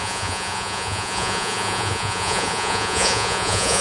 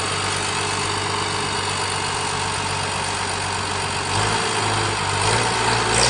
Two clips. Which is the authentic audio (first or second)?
second